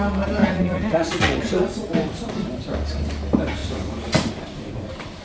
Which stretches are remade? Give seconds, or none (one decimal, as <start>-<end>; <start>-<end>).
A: 0.4-1.9